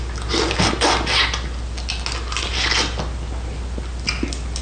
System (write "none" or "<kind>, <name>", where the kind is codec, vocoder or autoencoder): none